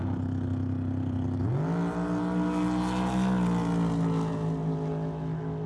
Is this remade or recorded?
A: recorded